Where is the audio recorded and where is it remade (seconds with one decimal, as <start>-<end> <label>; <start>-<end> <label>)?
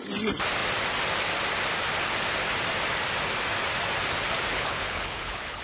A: 0.0-4.5 recorded; 4.5-5.6 remade